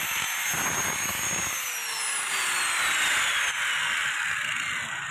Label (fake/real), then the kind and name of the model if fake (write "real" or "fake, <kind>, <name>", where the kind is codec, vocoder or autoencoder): real